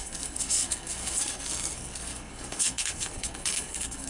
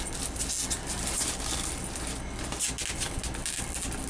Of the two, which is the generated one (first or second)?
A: first